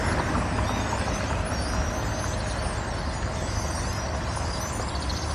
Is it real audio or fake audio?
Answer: real